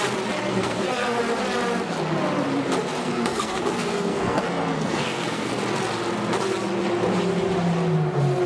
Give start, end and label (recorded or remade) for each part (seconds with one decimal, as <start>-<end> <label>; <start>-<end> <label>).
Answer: 0.0-0.5 recorded; 0.5-1.2 remade; 1.2-3.0 recorded; 3.0-5.5 remade; 5.5-8.5 recorded